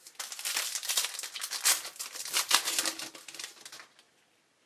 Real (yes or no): yes